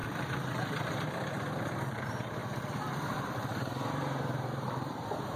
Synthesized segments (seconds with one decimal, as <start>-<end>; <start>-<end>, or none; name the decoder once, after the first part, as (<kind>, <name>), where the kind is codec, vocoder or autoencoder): 0.0-2.4 (vocoder, BigVGAN v2); 3.3-5.4